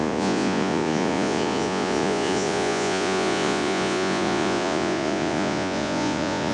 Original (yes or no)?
no